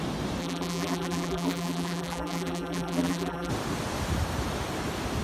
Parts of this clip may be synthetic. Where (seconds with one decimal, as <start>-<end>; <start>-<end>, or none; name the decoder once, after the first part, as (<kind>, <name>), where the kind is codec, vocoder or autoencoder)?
0.4-3.5 (vocoder, BigVGAN v2)

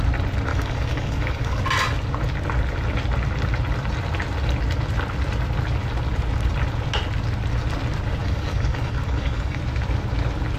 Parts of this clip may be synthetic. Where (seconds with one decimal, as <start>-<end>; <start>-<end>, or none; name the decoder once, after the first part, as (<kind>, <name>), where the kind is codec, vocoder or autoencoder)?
0.5-1.6 (codec, DAC); 8.2-9.6

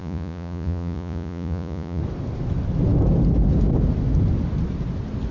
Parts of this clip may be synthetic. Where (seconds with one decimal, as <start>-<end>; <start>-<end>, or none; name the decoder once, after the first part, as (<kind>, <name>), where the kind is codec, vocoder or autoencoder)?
0.0-2.0 (vocoder, Vocos)

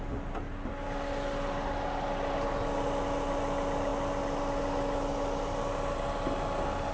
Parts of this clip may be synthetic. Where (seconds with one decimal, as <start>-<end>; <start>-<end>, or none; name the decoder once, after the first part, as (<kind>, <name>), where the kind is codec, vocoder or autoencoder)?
none